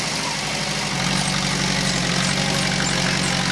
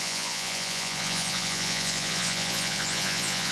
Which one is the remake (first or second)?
second